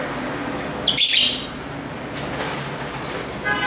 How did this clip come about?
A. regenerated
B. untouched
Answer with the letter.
B